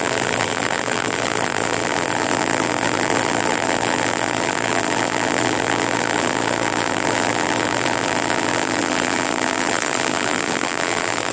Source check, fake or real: fake